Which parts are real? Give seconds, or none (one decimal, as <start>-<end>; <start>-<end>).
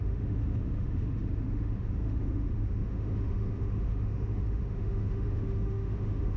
none